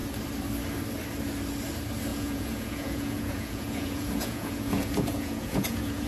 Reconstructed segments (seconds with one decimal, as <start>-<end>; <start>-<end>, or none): 2.1-6.1

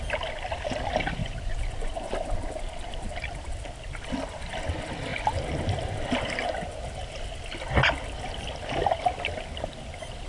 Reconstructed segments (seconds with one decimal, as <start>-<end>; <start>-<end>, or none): 1.2-2.1